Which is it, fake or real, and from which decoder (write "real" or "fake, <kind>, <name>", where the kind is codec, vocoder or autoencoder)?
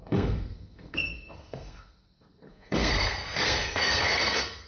fake, codec, SNAC